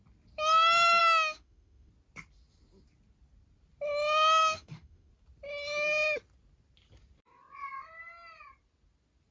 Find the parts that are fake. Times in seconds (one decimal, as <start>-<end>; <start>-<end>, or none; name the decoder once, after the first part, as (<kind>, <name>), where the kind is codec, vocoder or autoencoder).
1.0-1.9 (autoencoder, DAC-VAE); 4.4-5.1